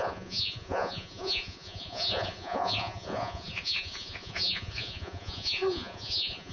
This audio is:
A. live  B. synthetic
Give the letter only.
B